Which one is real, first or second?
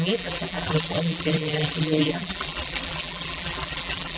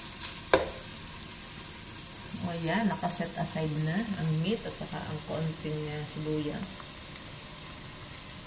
second